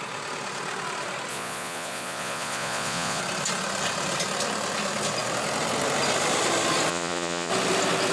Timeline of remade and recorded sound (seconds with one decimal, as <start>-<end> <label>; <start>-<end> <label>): 0.0-1.3 recorded; 1.3-3.2 remade; 3.2-6.9 recorded; 6.9-7.5 remade; 7.5-8.1 recorded